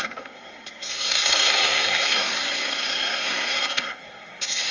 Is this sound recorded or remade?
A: remade